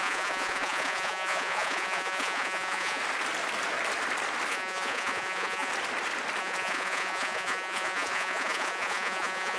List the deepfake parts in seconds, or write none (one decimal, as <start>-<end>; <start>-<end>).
0.0-3.0; 4.5-5.7; 6.4-9.6

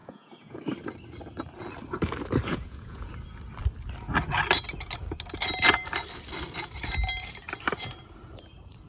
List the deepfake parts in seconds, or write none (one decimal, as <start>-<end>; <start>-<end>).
0.0-0.6; 2.5-3.1

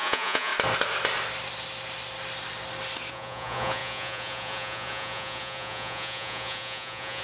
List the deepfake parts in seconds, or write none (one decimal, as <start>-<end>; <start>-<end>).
0.0-0.5; 3.1-7.2

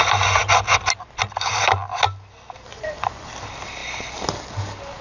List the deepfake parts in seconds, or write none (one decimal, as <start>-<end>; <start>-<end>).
2.7-3.3

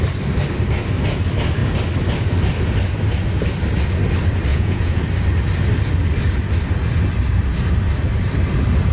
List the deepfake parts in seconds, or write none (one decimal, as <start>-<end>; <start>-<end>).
4.5-5.0

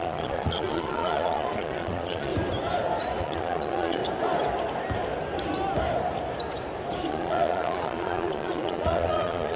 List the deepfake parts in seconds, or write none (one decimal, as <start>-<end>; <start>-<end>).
0.0-2.3; 3.2-4.0; 7.1-9.6